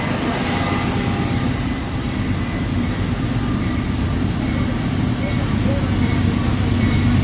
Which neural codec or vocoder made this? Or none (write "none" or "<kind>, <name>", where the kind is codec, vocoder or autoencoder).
none